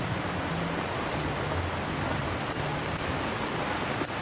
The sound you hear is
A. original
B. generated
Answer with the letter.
A